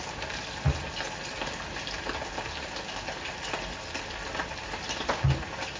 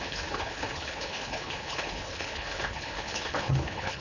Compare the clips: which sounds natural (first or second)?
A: first